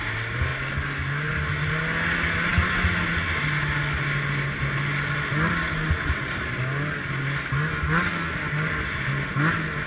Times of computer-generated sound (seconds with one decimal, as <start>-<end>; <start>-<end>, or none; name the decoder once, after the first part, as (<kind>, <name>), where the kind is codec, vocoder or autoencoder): none